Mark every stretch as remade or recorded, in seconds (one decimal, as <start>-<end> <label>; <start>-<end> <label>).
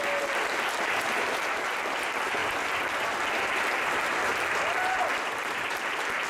0.0-6.3 recorded